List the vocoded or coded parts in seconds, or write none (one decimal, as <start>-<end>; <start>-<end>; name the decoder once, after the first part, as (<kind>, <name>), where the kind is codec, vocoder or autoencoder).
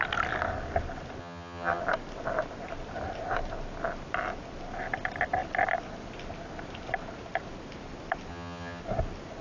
1.2-1.8 (vocoder, HiFi-GAN); 8.3-8.8